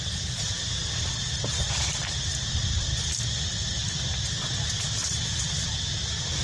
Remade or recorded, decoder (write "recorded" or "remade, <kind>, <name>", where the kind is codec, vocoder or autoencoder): remade, vocoder, BigVGAN v2